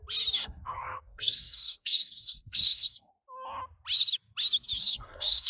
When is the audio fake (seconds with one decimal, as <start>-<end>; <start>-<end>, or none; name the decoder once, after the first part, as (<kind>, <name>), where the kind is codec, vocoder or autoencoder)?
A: 0.4-3.1 (codec, SNAC); 4.8-5.5